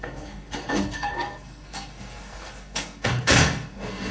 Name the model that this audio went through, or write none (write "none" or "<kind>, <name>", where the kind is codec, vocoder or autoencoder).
codec, SNAC